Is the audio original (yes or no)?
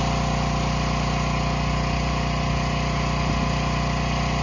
yes